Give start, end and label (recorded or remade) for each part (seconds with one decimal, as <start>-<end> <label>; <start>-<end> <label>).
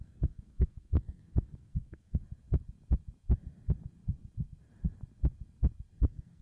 0.0-2.2 remade; 2.2-6.0 recorded; 6.0-6.4 remade